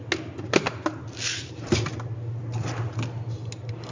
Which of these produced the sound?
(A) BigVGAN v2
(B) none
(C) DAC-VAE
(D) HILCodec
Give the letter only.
B